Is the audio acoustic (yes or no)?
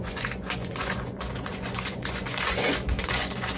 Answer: no